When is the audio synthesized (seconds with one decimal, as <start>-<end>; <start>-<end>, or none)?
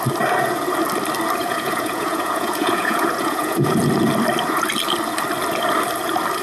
1.4-3.8